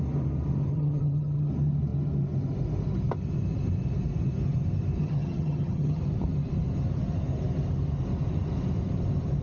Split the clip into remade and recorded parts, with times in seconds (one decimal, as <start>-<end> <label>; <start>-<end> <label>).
0.0-0.7 recorded; 0.7-1.5 remade; 1.5-5.0 recorded; 5.0-6.0 remade; 6.0-9.4 recorded